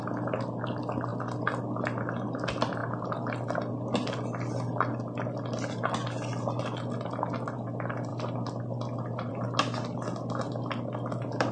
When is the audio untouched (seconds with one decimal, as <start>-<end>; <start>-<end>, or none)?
0.0-11.5